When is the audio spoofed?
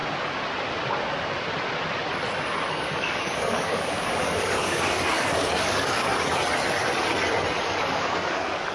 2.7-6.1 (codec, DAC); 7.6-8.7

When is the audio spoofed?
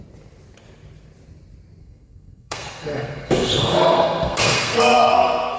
1.8-5.6 (codec, SNAC)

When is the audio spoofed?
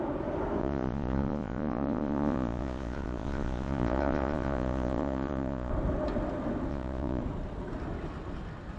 0.6-5.7 (vocoder, Vocos); 6.7-7.2